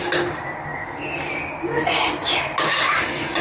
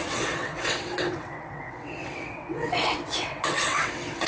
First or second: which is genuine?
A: first